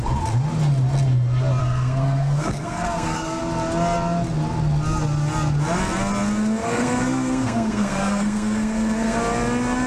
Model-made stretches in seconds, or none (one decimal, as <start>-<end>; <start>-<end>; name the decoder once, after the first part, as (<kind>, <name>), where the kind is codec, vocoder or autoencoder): 1.6-3.4 (codec, SNAC); 6.6-9.2